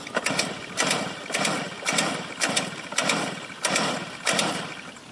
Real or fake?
fake